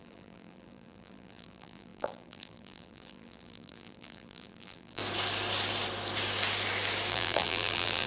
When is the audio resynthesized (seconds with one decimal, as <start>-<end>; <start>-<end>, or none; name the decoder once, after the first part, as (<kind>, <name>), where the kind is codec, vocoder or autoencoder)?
0.0-5.0 (vocoder, BigVGAN v2); 7.1-8.1

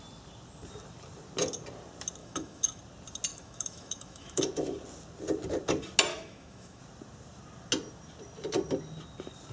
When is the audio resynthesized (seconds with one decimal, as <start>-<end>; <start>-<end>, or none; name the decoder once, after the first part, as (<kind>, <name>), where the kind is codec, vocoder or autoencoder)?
2.2-2.8 (autoencoder, DAC-VAE); 3.3-4.4; 6.1-6.8

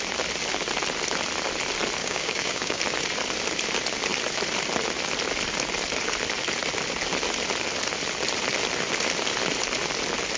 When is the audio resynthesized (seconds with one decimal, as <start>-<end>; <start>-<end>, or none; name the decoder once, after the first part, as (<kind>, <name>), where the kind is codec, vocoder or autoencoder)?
2.0-2.8 (codec, DAC)

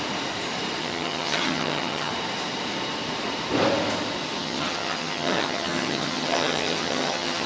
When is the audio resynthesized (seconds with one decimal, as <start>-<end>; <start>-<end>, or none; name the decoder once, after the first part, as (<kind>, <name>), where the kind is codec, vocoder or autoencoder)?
0.8-2.1 (vocoder, HiFi-GAN); 4.4-7.5